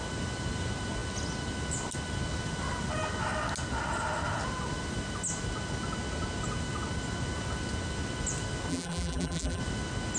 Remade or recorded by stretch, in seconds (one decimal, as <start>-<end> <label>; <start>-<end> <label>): 0.0-8.7 recorded; 8.7-9.6 remade; 9.6-10.2 recorded